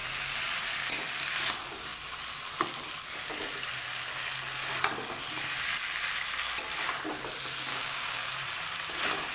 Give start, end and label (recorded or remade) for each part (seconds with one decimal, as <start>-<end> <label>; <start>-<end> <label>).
0.0-7.7 recorded; 7.7-8.3 remade; 8.3-9.3 recorded